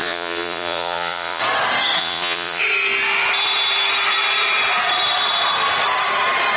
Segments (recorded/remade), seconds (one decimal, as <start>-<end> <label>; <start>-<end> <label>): 0.0-1.4 remade; 1.4-2.0 recorded; 2.0-2.6 remade; 2.6-6.6 recorded